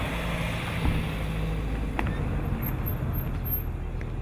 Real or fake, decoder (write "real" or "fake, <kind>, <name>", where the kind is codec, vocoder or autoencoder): real